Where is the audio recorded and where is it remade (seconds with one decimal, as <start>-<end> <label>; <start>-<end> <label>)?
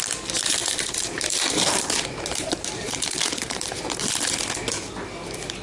0.0-0.6 recorded; 0.6-4.0 remade; 4.0-5.6 recorded